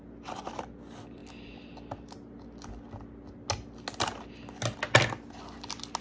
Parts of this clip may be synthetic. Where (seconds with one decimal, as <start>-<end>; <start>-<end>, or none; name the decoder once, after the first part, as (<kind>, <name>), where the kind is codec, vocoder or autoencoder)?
none